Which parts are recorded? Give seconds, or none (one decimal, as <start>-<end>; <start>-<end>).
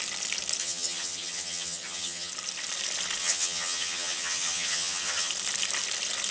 0.0-0.6; 2.3-3.2; 5.3-6.3